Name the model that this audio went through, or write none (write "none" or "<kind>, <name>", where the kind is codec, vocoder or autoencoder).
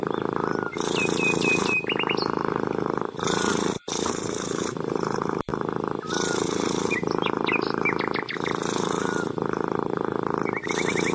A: none